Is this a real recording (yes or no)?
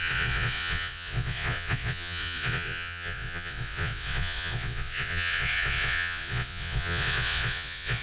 no